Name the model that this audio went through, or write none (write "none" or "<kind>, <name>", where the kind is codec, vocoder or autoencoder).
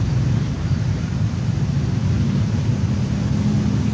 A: none